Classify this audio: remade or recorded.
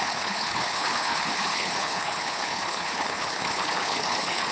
remade